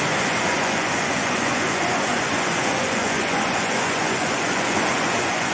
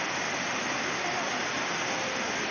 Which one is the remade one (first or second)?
first